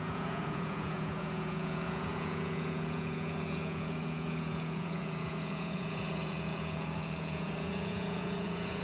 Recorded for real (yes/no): no